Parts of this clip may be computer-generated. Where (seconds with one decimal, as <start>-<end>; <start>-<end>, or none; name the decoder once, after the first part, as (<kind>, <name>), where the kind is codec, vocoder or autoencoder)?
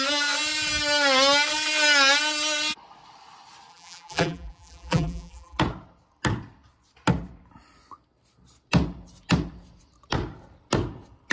3.7-5.6 (vocoder, BigVGAN v2)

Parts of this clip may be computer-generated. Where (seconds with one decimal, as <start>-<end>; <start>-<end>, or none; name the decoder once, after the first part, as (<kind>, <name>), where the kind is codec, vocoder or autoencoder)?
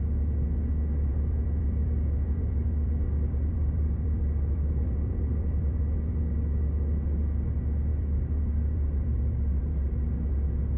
1.1-6.2 (vocoder, BigVGAN v2); 7.9-9.7